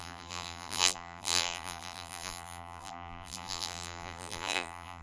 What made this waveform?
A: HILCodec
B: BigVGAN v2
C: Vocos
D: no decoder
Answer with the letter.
B